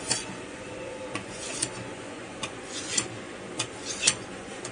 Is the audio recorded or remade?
remade